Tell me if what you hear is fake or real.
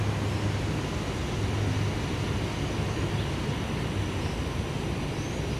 real